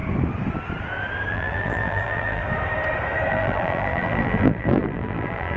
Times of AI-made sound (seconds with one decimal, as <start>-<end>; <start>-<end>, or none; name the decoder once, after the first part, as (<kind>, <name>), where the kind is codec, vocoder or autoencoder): 1.3-2.4 (vocoder, BigVGAN v2); 3.3-5.6